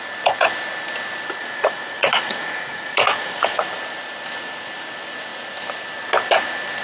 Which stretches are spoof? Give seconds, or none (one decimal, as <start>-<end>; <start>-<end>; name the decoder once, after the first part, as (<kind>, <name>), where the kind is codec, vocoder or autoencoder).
1.4-3.6 (vocoder, Vocos)